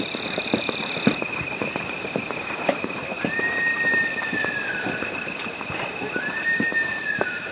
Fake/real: fake